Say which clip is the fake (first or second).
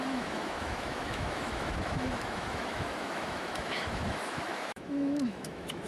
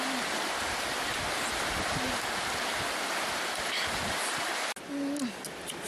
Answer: first